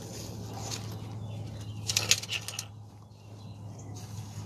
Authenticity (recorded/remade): recorded